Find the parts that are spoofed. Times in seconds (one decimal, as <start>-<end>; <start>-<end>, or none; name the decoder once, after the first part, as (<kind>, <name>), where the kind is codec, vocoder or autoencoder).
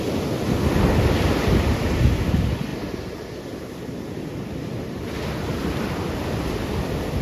none